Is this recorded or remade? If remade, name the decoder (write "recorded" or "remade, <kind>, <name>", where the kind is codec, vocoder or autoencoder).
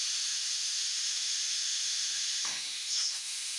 remade, autoencoder, DAC-VAE